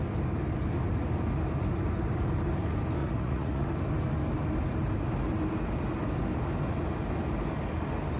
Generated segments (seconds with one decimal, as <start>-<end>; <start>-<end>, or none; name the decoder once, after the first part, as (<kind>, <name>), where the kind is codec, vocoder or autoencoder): 3.0-3.7 (vocoder, Vocos)